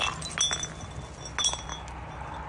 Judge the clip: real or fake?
real